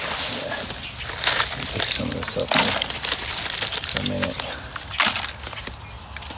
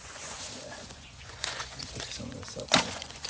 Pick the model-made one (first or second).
second